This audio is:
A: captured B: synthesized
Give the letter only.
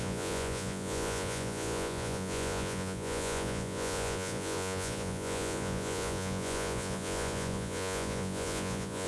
B